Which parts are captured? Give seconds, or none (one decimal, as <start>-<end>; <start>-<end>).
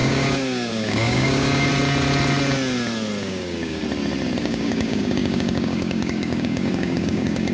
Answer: 1.7-3.2; 3.8-4.4